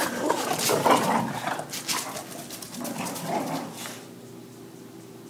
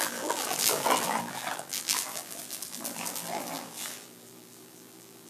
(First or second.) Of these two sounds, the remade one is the second